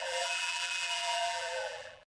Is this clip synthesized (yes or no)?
yes